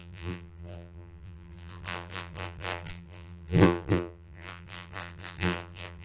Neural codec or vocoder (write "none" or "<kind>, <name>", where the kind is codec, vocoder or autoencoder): vocoder, BigVGAN v2